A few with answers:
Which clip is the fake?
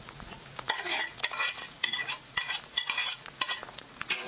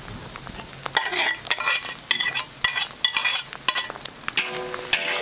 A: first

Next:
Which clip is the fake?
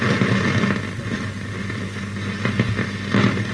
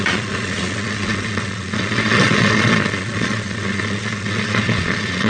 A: second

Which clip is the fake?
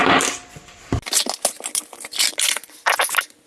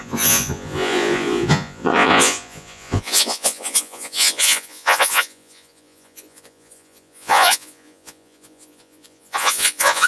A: second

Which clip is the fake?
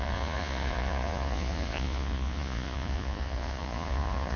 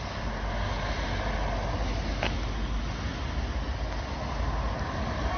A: first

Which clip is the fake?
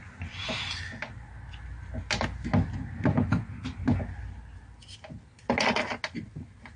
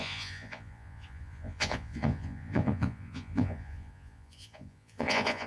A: second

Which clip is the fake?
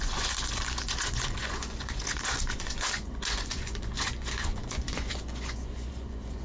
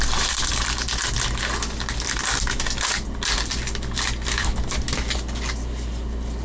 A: first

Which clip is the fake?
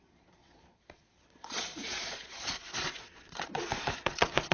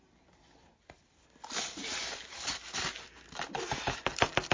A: first